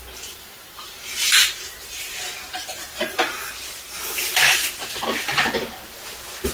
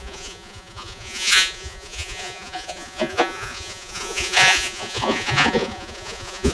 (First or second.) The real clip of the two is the first